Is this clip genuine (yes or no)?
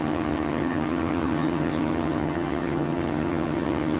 no